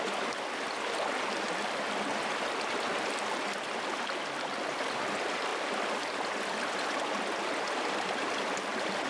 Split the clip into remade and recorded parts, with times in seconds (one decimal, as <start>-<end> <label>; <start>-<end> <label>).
0.0-9.1 recorded